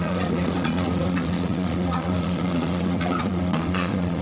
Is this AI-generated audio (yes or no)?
yes